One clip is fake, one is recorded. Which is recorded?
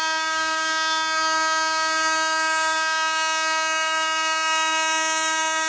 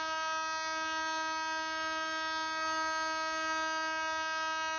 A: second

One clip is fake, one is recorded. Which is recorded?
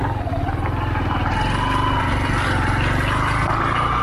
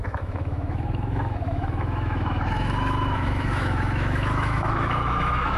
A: first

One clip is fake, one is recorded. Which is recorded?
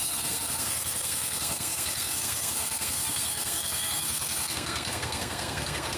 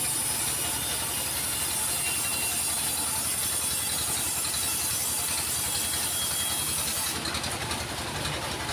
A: second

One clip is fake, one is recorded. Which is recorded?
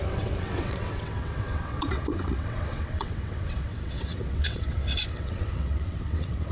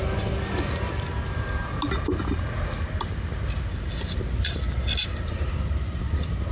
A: second